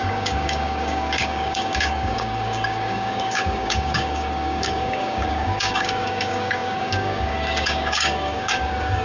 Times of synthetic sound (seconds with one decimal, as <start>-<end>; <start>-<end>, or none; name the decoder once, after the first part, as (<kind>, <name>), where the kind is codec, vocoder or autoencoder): 0.0-9.0 (codec, DAC)